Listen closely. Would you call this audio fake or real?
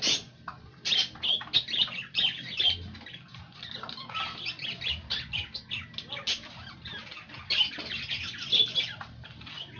real